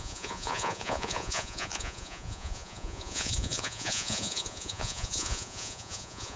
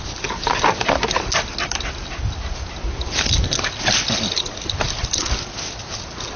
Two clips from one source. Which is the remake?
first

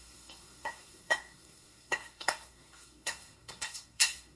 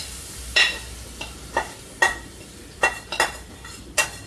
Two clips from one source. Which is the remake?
first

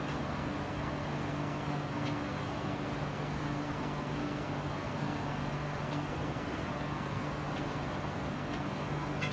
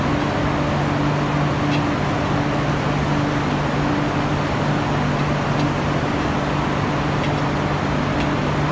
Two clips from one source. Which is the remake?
first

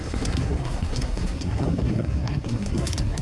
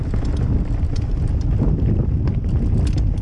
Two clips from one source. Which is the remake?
first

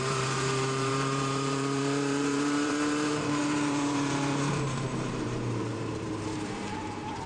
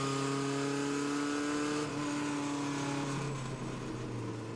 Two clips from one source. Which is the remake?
first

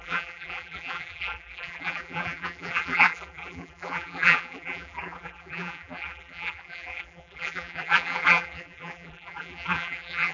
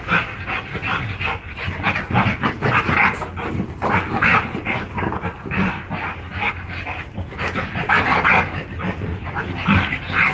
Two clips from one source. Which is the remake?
first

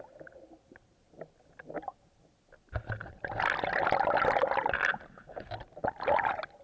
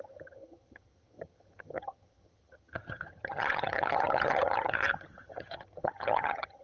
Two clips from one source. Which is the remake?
second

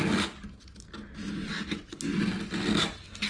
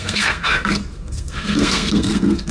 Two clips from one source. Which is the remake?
second